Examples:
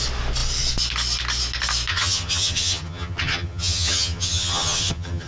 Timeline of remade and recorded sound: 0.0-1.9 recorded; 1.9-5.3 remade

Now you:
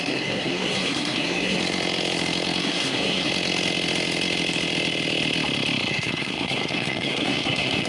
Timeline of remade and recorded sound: 0.0-1.6 remade; 1.6-2.6 recorded; 2.6-3.3 remade; 3.3-5.9 recorded; 5.9-7.9 remade

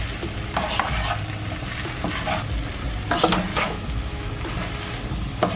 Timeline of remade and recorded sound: 0.0-3.5 recorded; 3.5-4.3 remade; 4.3-5.6 recorded